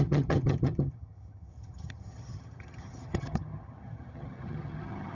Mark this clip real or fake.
fake